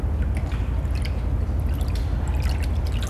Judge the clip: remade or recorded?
recorded